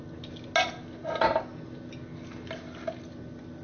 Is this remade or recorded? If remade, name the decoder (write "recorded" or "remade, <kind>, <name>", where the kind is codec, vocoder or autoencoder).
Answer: recorded